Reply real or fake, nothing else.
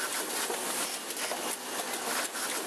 real